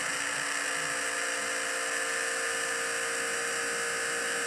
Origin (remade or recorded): recorded